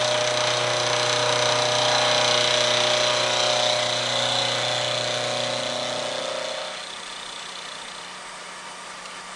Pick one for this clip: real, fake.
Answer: real